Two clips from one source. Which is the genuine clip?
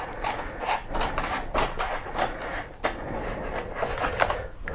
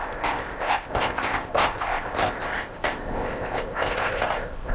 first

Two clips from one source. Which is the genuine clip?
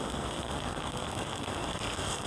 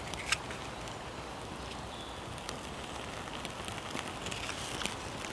second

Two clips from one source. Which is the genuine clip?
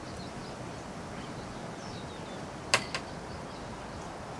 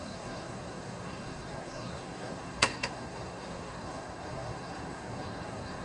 first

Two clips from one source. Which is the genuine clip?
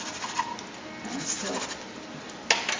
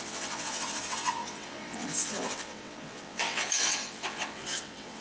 first